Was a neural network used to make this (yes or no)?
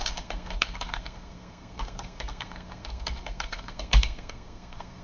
yes